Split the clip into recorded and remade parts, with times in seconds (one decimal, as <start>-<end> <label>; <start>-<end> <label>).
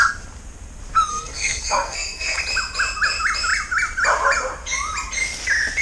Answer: 0.0-1.1 recorded; 1.1-2.4 remade; 2.4-5.8 recorded